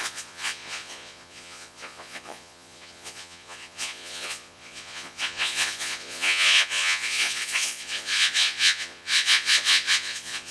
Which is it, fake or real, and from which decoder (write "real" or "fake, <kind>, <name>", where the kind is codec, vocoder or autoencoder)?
fake, vocoder, Vocos